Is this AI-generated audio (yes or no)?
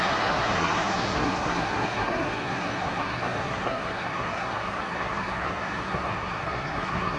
yes